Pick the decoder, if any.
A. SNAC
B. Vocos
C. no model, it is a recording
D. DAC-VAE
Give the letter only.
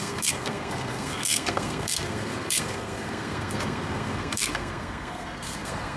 A